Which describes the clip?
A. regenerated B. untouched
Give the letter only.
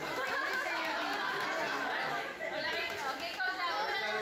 B